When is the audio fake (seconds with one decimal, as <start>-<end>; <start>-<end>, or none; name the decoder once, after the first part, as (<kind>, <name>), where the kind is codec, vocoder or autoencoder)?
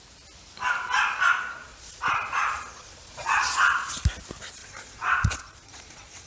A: 1.6-4.0 (vocoder, Vocos); 4.6-6.3